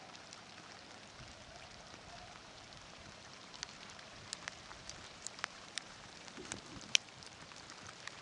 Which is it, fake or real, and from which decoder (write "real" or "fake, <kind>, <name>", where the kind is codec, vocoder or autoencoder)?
fake, vocoder, BigVGAN v2